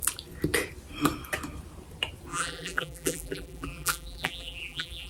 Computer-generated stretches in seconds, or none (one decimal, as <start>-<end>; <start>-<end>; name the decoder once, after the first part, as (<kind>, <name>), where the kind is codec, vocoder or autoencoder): 2.3-5.1 (vocoder, BigVGAN v2)